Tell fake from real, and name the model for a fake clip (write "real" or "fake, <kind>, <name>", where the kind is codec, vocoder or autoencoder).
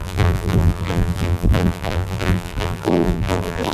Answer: fake, vocoder, BigVGAN v2